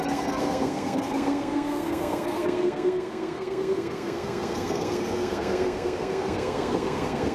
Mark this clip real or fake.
fake